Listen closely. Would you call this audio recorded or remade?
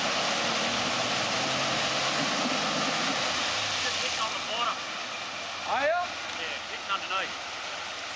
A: recorded